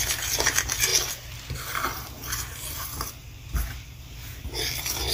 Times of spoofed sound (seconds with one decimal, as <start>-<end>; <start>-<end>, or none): none